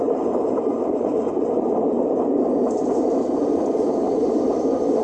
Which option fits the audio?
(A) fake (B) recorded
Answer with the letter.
A